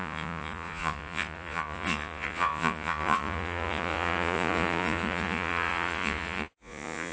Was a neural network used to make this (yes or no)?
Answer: yes